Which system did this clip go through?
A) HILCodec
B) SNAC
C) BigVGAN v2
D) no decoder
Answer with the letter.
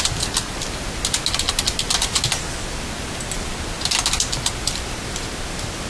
D